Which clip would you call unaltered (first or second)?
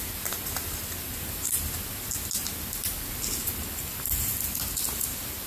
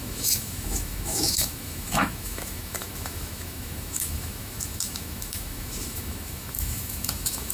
first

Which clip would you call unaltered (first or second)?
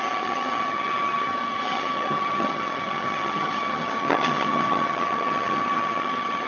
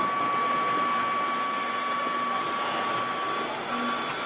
second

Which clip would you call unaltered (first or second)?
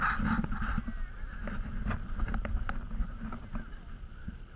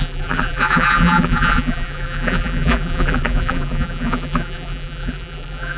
first